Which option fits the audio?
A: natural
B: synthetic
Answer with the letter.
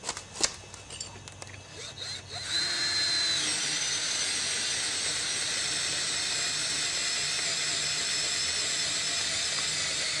A